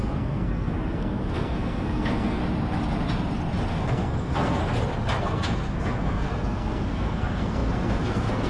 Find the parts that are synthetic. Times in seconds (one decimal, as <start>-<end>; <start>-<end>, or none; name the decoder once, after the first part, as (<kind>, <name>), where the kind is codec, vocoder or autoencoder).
0.0-2.4 (codec, SNAC); 3.7-4.6; 5.2-8.5